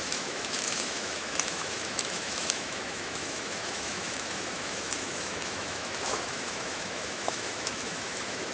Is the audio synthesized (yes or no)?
yes